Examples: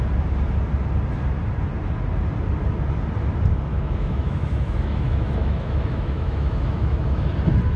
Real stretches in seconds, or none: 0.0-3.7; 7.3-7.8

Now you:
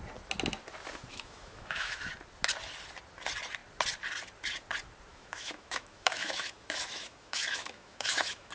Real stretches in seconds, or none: 0.0-1.1; 2.1-5.1